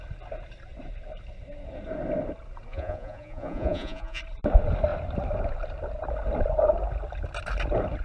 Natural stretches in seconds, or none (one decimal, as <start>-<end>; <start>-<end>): 0.0-2.7; 4.2-8.0